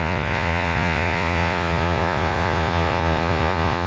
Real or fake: fake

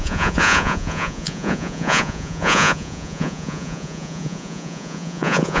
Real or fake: fake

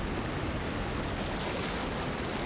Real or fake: real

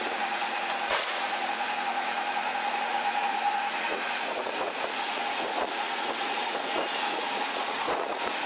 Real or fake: fake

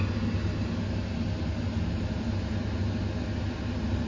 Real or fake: real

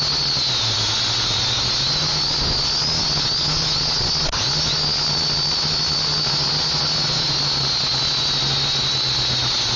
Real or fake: real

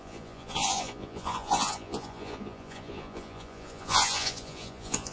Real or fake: fake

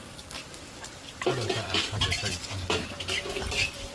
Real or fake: real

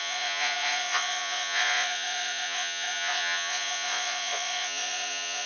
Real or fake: fake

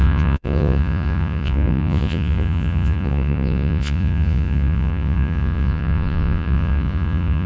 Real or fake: fake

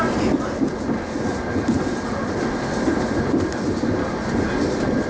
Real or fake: real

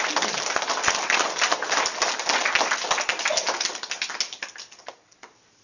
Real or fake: real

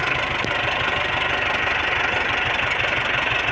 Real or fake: real